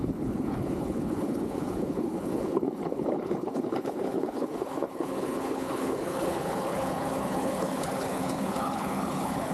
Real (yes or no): no